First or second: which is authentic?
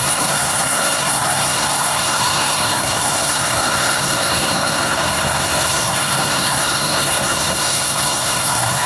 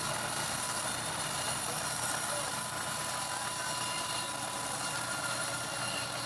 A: second